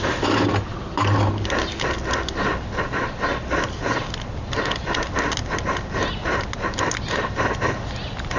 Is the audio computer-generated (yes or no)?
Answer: no